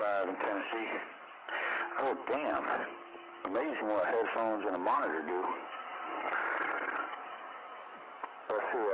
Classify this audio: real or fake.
fake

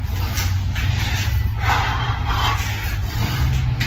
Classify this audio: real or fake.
real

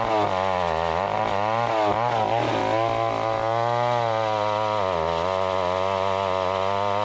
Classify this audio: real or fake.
real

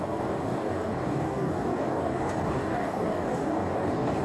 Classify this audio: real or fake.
fake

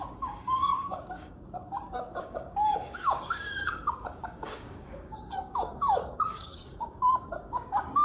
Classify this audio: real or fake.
fake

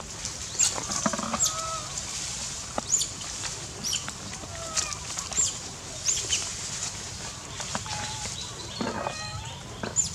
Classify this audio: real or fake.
real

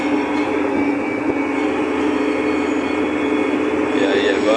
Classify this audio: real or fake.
real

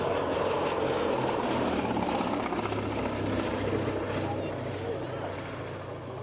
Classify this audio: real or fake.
real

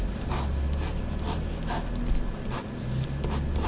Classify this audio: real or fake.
real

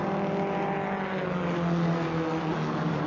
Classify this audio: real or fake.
real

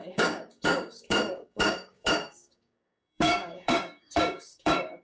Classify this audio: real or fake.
fake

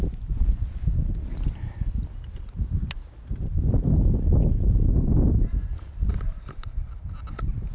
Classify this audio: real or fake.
real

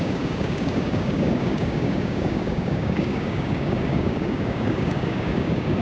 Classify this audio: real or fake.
fake